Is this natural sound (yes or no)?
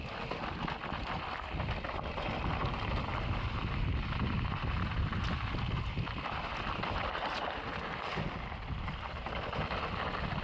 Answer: yes